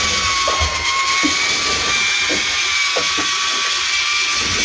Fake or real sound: real